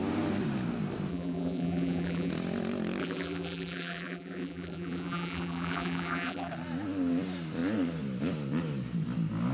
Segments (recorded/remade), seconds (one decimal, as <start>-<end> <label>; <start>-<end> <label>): 0.0-1.1 recorded; 1.1-2.3 remade; 2.3-3.0 recorded; 3.0-6.5 remade; 6.5-9.5 recorded